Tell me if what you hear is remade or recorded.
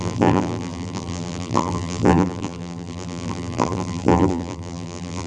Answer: remade